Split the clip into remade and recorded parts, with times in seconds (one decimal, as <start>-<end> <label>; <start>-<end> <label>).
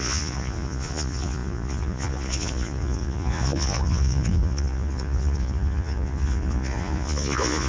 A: 0.0-7.7 remade